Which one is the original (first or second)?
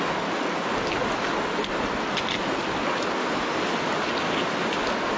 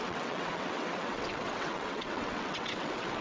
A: first